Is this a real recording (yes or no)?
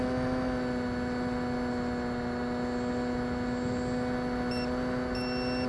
yes